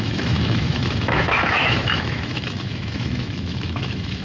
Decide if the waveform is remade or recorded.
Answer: remade